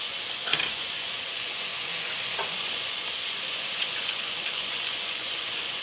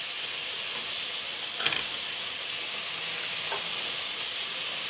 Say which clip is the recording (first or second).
second